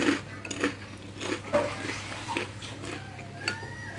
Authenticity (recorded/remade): recorded